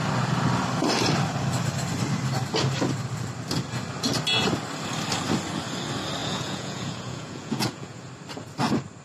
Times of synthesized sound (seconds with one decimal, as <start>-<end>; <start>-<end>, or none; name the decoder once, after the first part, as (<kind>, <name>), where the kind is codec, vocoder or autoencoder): 6.2-8.1 (vocoder, Vocos)